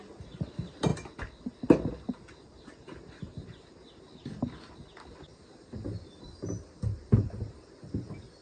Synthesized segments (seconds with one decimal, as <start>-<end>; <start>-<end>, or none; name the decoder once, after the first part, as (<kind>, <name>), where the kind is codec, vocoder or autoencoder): none